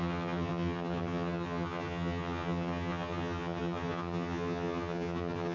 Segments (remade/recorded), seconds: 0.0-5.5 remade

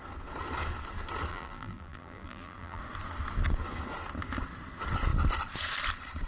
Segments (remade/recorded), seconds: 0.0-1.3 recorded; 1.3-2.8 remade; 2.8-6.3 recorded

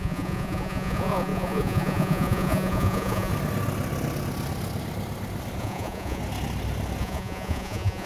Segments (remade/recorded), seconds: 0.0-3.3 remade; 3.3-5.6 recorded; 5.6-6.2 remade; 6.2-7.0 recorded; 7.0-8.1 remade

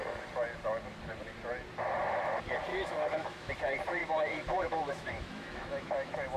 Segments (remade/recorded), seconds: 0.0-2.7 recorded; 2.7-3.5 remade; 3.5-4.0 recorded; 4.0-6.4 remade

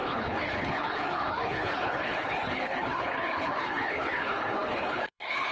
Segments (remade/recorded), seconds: 0.0-5.5 remade

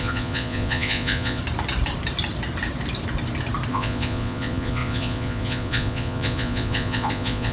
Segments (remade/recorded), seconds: 0.0-1.4 remade; 1.4-3.7 recorded; 3.7-7.5 remade

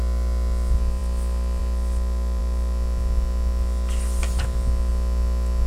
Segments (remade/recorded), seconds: 0.0-5.7 recorded

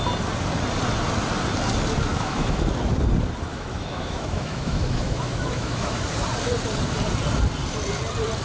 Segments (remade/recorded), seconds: 0.0-2.1 recorded; 2.1-2.6 remade; 2.6-3.5 recorded; 3.5-6.0 remade; 6.0-8.4 recorded